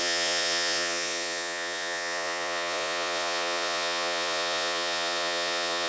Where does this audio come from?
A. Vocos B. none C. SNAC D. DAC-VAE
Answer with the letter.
A